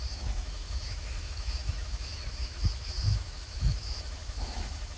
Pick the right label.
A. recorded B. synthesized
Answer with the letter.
B